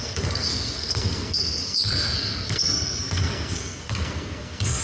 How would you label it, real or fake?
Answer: fake